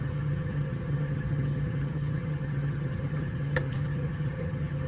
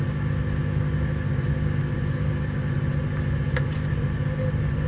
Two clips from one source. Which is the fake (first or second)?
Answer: first